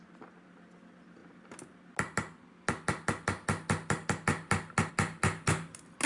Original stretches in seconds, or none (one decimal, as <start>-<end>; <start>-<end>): 0.0-6.1